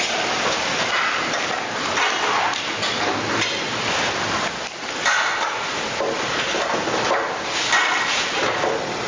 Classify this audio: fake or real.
real